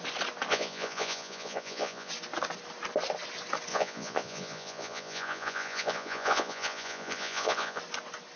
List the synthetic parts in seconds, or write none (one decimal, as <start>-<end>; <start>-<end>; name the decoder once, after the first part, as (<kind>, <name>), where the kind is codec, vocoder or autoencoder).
0.5-2.1 (vocoder, Vocos); 3.7-7.8